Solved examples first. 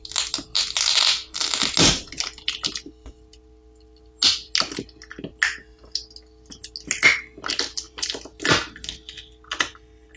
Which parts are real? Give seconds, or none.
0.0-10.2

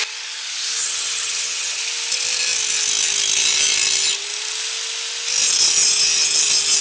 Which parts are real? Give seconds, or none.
0.0-0.8; 1.8-6.8

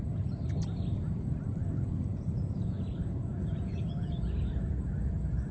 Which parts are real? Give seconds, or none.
0.0-2.1

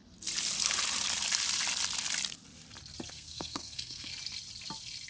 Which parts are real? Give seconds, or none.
0.0-3.1; 4.1-5.1

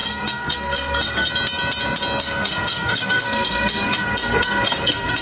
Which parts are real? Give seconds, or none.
1.3-2.2

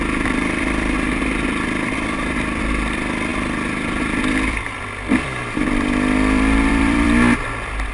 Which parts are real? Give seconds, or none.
none